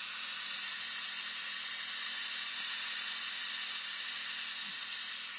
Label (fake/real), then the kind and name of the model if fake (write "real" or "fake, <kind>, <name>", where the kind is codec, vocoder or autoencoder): real